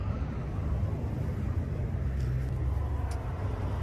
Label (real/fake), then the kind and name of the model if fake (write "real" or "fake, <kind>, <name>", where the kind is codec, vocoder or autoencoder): real